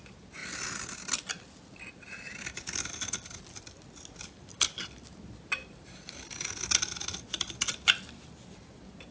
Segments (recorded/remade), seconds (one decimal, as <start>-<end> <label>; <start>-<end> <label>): 0.0-9.1 recorded